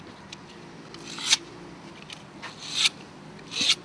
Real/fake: real